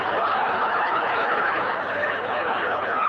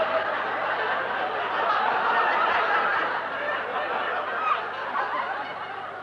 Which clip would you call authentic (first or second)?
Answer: second